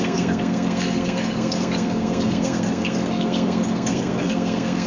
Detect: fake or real fake